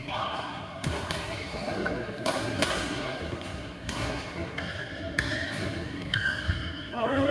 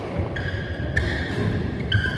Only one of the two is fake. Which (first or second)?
first